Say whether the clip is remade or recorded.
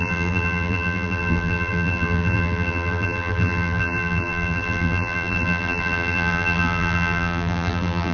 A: remade